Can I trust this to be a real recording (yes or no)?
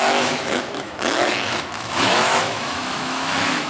no